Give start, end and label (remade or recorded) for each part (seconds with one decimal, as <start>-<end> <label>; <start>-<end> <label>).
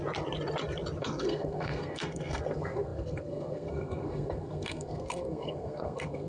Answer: 0.0-1.0 recorded; 1.0-6.3 remade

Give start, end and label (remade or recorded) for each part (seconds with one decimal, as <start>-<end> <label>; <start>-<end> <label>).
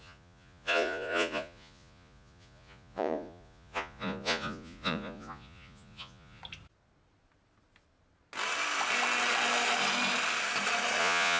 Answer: 0.0-6.4 remade; 6.4-11.0 recorded; 11.0-11.4 remade